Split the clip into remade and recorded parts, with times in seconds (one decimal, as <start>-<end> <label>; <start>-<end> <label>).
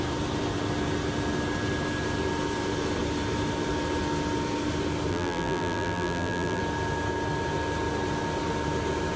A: 0.0-5.1 recorded; 5.1-6.6 remade; 6.6-9.2 recorded